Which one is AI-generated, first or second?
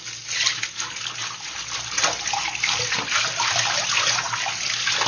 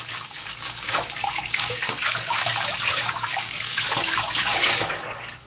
second